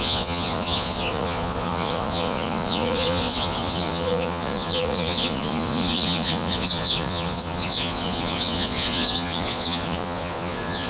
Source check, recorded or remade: remade